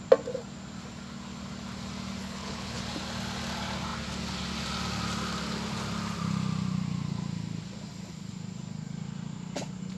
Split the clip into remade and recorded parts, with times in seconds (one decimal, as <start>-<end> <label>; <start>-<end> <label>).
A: 0.0-2.2 recorded; 2.2-2.8 remade; 2.8-10.0 recorded